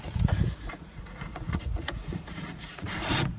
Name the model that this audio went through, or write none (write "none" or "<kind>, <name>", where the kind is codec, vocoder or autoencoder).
vocoder, Vocos